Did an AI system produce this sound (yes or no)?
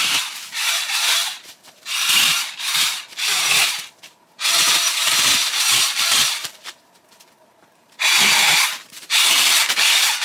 yes